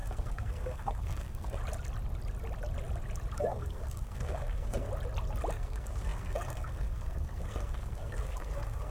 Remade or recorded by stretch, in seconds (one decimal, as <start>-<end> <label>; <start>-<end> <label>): 0.0-1.6 remade; 1.6-3.4 recorded; 3.4-4.9 remade; 4.9-5.5 recorded; 5.5-8.9 remade